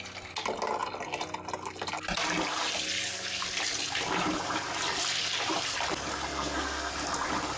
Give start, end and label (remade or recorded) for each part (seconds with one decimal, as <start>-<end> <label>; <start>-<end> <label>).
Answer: 0.0-6.3 recorded; 6.3-6.9 remade; 6.9-7.6 recorded